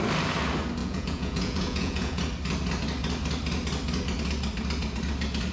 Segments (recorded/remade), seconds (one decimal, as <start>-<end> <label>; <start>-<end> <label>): 0.0-0.8 recorded; 0.8-2.2 remade; 2.2-5.5 recorded

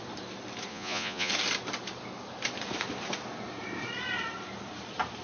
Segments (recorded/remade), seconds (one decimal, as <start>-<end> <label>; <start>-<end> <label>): 0.0-0.7 recorded; 0.7-1.3 remade; 1.3-5.2 recorded

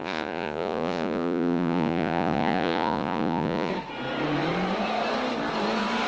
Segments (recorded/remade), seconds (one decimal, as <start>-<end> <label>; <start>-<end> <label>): 0.0-3.7 remade; 3.7-6.1 recorded